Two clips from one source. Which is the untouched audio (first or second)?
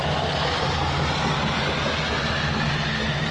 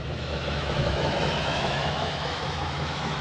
first